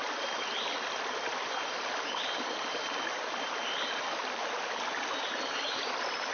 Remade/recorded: recorded